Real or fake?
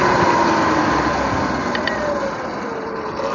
real